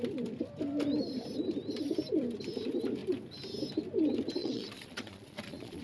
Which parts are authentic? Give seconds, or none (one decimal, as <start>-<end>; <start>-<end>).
0.0-4.4